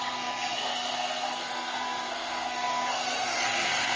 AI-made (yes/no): yes